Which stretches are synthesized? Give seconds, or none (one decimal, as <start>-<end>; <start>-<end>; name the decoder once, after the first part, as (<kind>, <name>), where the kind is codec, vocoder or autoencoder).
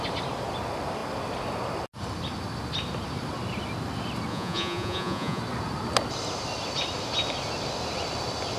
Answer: 4.3-5.4 (vocoder, Vocos)